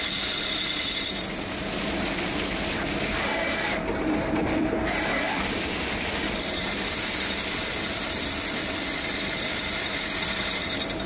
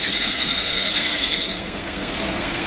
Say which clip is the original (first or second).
first